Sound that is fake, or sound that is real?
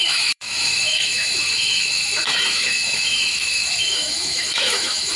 fake